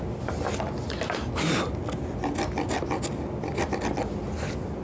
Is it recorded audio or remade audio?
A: recorded